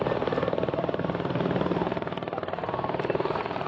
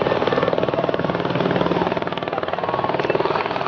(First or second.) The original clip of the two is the second